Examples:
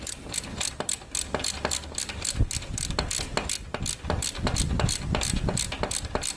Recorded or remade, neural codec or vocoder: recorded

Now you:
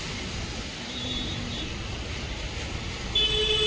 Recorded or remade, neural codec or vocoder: recorded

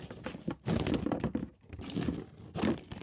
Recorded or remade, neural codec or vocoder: recorded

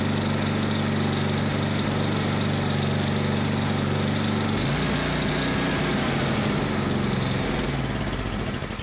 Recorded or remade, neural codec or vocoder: recorded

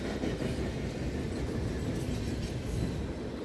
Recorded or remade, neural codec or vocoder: recorded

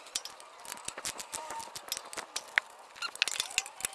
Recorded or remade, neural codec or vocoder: recorded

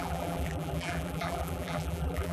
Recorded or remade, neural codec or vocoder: remade, vocoder, BigVGAN v2